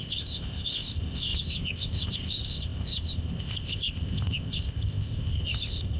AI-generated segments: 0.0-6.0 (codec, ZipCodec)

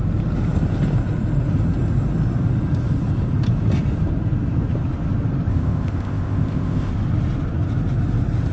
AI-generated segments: 5.5-6.9 (codec, ZipCodec)

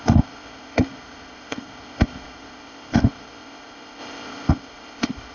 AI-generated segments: 0.0-5.3 (codec, ZipCodec)

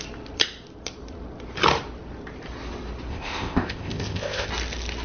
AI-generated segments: 3.1-4.5 (codec, ZipCodec)

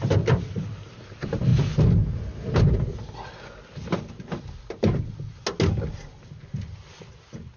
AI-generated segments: none